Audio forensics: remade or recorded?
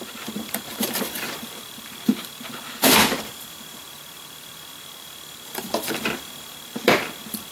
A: remade